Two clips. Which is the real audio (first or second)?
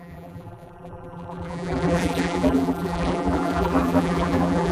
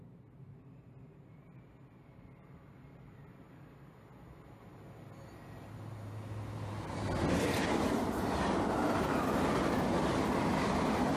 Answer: second